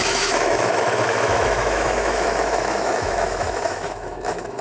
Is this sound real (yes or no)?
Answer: no